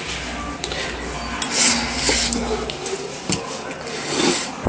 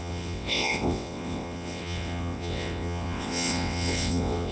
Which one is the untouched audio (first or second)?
first